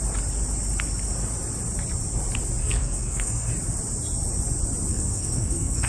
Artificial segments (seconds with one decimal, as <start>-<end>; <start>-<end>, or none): 2.6-3.5; 4.9-5.9